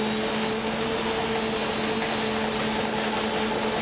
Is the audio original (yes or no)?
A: yes